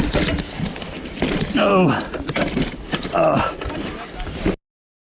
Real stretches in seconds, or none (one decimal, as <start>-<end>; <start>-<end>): 0.0-5.1